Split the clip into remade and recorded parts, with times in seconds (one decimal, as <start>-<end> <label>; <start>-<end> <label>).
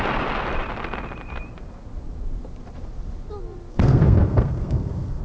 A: 0.0-3.7 recorded; 3.7-5.2 remade